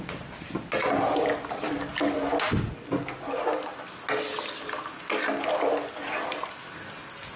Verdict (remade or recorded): recorded